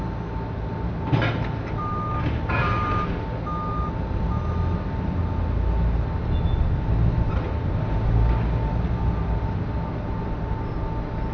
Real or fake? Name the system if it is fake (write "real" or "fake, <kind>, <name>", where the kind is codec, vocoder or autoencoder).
real